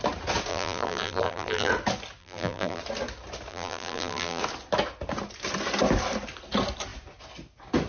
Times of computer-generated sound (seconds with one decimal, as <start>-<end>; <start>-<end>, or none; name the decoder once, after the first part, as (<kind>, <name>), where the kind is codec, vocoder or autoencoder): 0.5-1.7 (vocoder, BigVGAN v2); 2.2-2.8; 3.5-4.4